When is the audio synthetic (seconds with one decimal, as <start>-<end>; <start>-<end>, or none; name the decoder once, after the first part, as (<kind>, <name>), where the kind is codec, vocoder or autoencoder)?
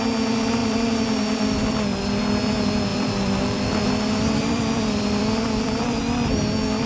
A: 0.6-2.2 (vocoder, BigVGAN v2); 2.9-6.0